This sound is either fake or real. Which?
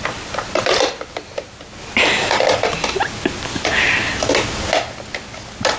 real